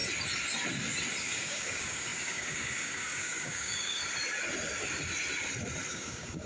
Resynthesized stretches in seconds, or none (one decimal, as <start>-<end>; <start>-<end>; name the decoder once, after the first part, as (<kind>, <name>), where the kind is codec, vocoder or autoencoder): 1.2-4.0 (codec, DAC); 5.9-6.5